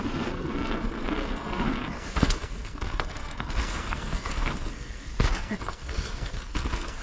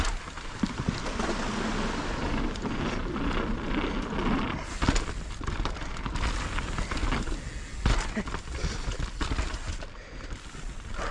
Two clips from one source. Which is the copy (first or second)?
first